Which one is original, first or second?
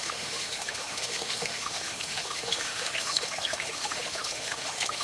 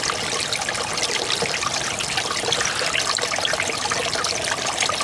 second